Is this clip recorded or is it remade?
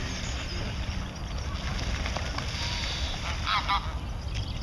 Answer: recorded